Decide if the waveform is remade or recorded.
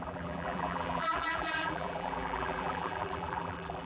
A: remade